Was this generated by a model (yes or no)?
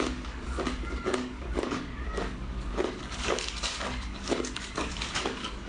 yes